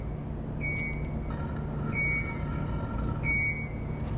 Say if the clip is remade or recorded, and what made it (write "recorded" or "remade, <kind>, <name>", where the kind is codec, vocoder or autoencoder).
recorded